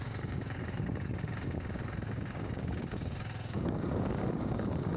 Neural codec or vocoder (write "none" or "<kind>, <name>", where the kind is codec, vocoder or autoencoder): codec, DAC